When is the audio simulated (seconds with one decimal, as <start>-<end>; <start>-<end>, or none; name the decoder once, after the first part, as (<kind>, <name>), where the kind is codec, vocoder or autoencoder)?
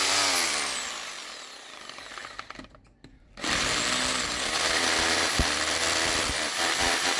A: 0.0-7.2 (vocoder, BigVGAN v2)